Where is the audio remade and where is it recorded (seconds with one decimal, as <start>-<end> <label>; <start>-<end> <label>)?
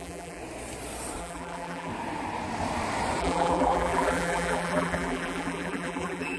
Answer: 0.0-0.4 remade; 0.4-1.2 recorded; 1.2-1.9 remade; 1.9-3.2 recorded; 3.2-6.4 remade